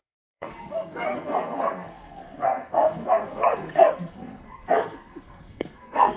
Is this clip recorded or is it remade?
remade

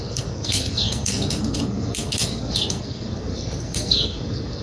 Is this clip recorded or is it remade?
remade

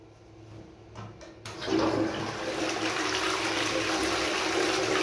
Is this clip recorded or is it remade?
recorded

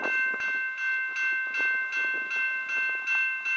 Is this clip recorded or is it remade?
recorded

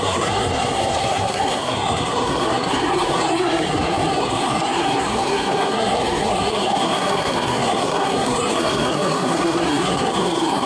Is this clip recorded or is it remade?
remade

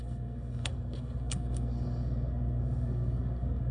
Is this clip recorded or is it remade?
remade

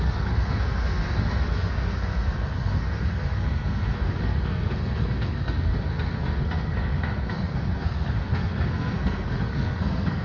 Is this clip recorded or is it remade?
remade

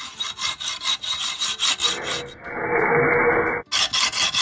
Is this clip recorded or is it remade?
recorded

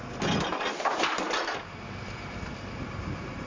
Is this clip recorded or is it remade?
recorded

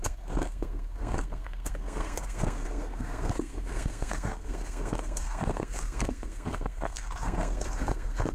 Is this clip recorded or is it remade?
remade